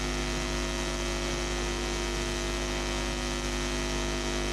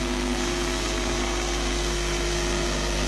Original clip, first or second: first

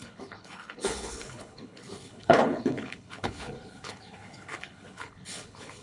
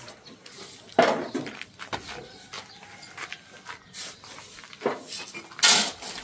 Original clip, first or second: second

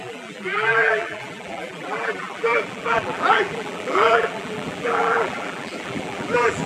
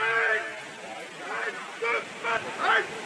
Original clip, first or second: second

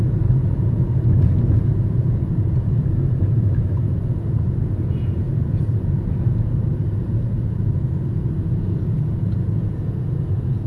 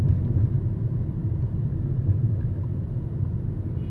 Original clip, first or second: second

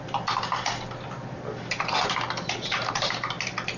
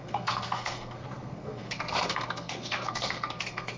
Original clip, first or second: first